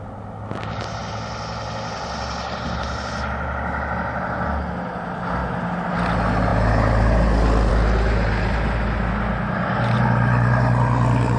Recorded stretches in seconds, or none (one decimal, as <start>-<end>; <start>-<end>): 0.0-11.4